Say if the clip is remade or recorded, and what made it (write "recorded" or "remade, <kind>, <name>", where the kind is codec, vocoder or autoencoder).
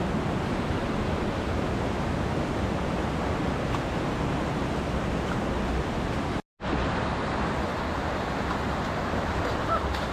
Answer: recorded